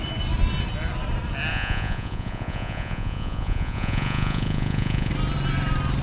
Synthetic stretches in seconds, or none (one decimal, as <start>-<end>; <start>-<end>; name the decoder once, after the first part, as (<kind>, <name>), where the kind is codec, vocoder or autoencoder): 1.5-5.1 (vocoder, Vocos)